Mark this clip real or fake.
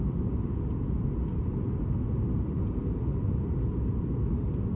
real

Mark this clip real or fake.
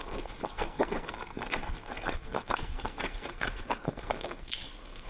fake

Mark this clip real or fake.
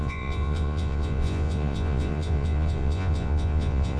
fake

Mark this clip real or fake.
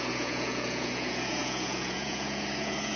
fake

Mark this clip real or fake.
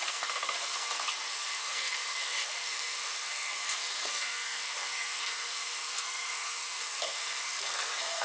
fake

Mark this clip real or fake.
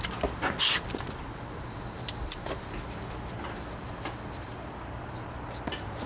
real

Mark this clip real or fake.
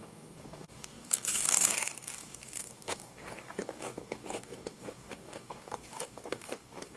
fake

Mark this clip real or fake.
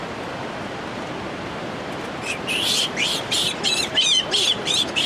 fake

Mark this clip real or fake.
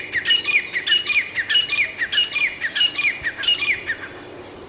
real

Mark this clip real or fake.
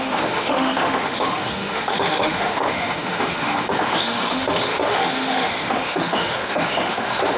fake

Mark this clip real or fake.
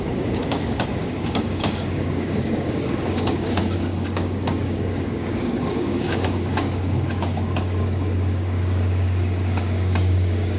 fake